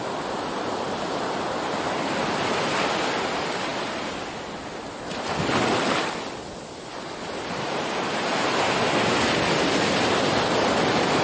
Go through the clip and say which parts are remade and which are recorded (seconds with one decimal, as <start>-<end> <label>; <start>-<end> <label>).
0.0-11.2 recorded